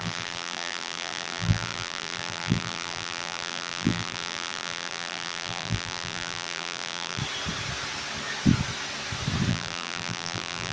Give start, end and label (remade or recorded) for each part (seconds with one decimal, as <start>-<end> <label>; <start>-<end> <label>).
0.0-7.2 remade; 7.2-9.5 recorded; 9.5-10.7 remade